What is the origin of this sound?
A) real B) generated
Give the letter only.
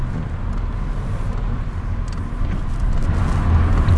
A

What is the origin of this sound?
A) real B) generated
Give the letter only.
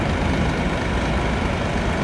A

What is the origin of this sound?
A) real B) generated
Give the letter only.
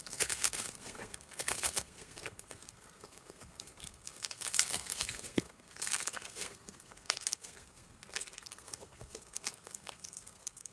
B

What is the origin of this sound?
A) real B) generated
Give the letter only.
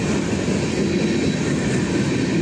A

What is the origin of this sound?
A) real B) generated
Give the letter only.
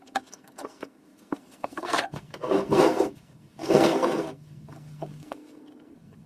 B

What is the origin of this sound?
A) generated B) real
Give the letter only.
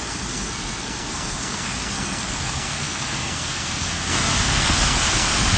A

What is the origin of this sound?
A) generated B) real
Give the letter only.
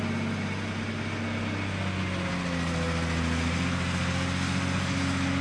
B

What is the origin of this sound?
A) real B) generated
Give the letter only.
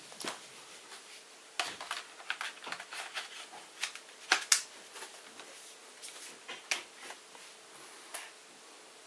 A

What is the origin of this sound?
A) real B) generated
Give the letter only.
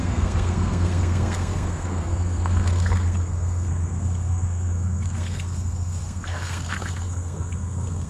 B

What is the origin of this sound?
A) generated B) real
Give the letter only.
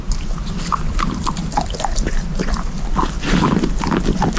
B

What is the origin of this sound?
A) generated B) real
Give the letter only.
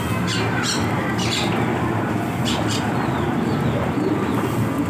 B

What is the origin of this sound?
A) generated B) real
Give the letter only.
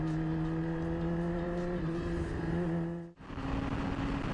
B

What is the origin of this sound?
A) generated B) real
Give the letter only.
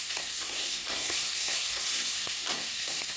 A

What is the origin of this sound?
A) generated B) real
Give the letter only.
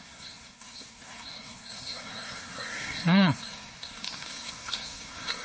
A